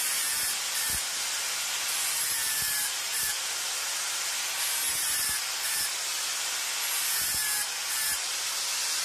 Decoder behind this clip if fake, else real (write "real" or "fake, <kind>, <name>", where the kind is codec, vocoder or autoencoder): real